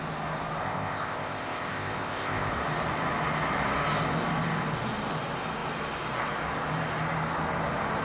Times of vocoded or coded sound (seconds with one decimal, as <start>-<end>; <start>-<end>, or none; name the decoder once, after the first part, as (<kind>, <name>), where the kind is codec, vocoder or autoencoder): 0.6-2.5 (codec, ZipCodec)

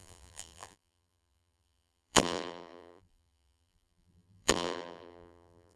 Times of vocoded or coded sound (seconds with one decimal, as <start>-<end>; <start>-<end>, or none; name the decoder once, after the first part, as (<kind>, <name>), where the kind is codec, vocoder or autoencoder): 0.0-5.8 (vocoder, BigVGAN v2)

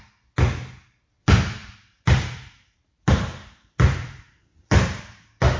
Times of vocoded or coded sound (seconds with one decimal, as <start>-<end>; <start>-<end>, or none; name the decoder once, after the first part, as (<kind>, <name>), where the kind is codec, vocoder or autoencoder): 1.6-5.0 (vocoder, BigVGAN v2)